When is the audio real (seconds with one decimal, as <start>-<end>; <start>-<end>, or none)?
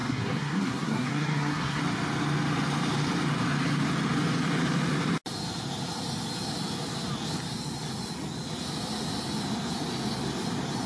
1.8-10.9